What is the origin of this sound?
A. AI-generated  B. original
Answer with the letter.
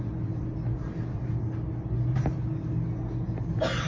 B